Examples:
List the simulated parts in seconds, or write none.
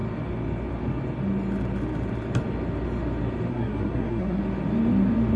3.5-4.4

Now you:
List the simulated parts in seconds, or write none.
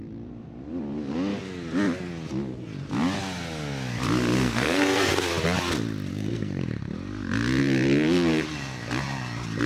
4.4-5.1; 6.1-6.6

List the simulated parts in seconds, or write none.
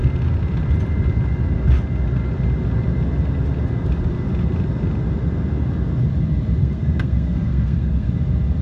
6.6-8.1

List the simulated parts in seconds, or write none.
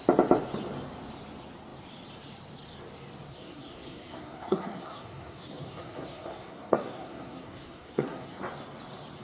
3.3-8.4